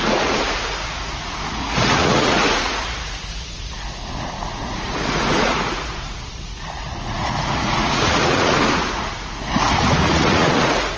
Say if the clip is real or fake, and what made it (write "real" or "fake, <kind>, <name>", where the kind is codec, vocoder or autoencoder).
fake, vocoder, Vocos